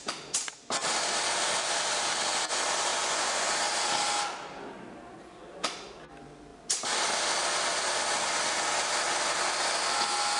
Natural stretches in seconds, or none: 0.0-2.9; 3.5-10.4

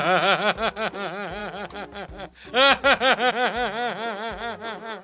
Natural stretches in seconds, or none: 0.0-5.0

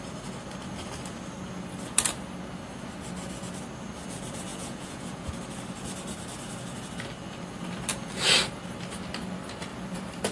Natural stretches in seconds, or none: 0.0-4.5; 5.3-10.3

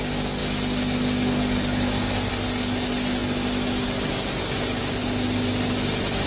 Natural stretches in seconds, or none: 0.0-6.3

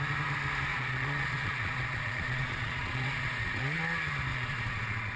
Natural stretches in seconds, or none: 0.0-0.7; 3.8-4.3

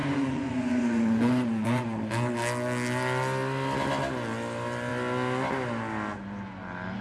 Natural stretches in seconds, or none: 2.0-7.0

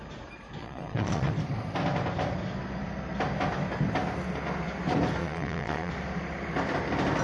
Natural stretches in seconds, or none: 0.0-0.6; 1.3-5.2; 5.9-7.2